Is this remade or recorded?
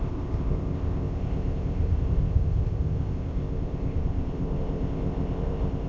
remade